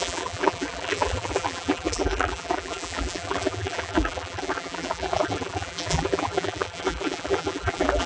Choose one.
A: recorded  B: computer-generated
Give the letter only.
B